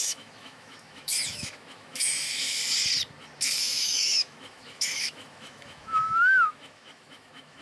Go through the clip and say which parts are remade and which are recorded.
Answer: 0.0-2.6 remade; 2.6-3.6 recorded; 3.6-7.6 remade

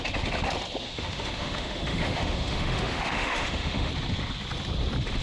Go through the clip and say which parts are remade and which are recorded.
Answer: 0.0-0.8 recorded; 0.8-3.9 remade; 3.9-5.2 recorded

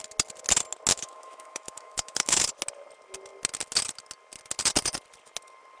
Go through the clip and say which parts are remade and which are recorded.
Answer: 0.0-0.9 recorded; 0.9-2.4 remade; 2.4-5.8 recorded

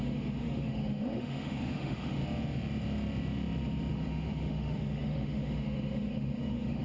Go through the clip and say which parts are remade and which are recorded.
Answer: 0.0-2.2 remade; 2.2-3.9 recorded; 3.9-6.8 remade

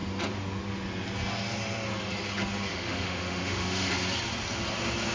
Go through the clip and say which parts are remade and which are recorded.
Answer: 0.0-2.7 recorded; 2.7-3.9 remade; 3.9-5.1 recorded

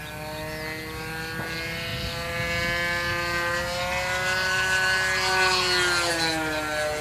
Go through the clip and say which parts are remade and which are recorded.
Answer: 0.0-7.0 recorded

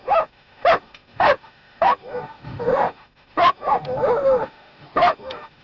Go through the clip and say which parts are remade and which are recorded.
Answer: 0.0-5.6 remade

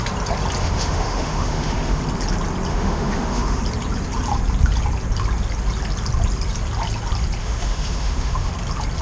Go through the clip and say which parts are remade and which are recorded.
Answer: 0.0-0.6 recorded; 0.6-2.0 remade; 2.0-2.7 recorded; 2.7-3.6 remade; 3.6-7.4 recorded; 7.4-8.5 remade; 8.5-9.0 recorded